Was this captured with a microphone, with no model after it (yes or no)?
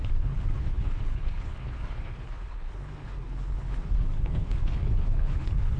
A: no